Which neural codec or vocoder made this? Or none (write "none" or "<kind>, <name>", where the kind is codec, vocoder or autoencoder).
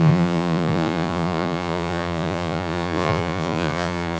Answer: vocoder, Vocos